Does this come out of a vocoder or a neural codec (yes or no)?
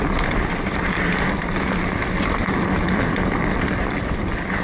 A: no